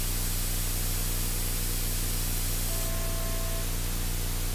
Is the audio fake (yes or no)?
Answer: no